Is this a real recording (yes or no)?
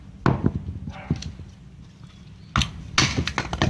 yes